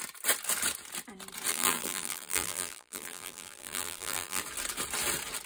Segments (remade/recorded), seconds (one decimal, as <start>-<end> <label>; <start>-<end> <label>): 0.0-1.5 recorded; 1.5-4.4 remade; 4.4-5.5 recorded